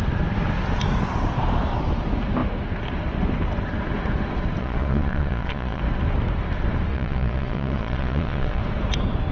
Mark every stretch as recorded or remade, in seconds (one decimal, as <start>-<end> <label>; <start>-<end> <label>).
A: 0.0-4.6 recorded; 4.6-5.8 remade; 5.8-6.9 recorded; 6.9-8.6 remade; 8.6-9.3 recorded